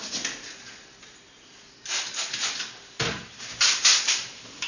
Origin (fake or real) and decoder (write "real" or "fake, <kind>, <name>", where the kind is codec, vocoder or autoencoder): real